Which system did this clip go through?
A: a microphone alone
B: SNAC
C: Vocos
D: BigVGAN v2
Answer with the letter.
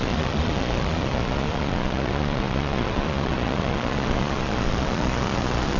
C